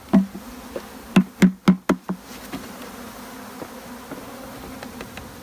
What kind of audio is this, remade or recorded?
recorded